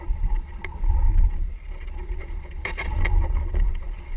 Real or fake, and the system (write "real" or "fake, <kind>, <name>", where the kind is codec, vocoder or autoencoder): fake, vocoder, Vocos